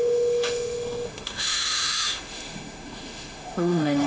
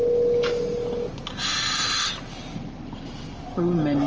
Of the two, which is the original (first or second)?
second